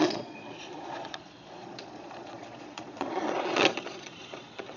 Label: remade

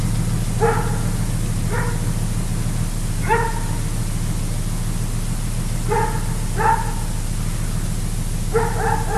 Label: recorded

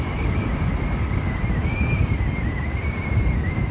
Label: recorded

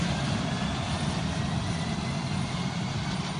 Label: recorded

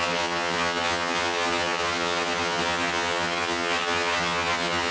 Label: remade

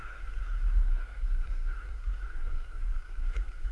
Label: remade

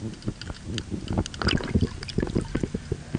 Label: recorded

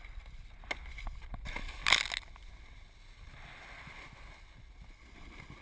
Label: recorded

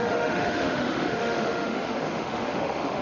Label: remade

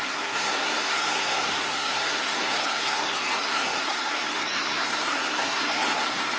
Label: remade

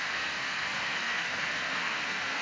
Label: remade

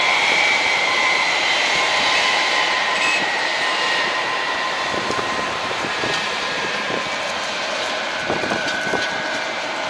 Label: remade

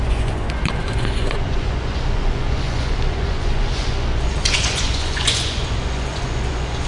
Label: remade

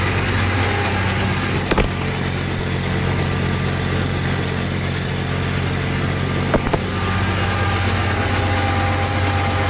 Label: recorded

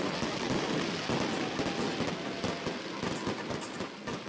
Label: recorded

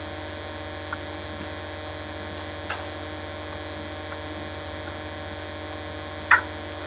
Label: recorded